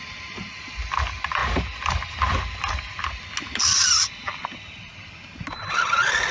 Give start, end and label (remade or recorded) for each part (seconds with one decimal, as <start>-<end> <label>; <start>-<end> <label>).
0.0-6.3 recorded